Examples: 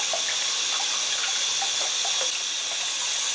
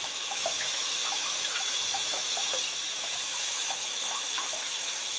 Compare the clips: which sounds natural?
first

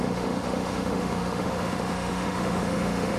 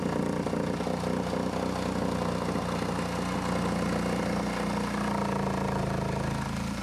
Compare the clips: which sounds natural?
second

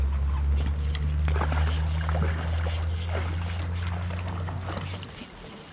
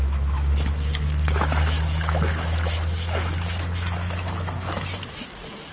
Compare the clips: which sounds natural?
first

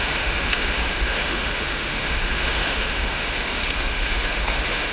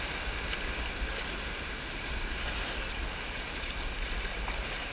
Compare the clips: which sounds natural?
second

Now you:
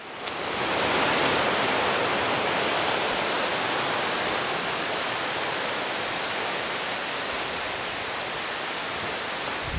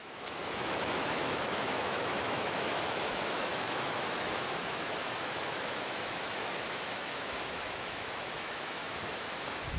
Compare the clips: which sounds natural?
first